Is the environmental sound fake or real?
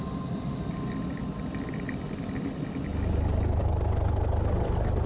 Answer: real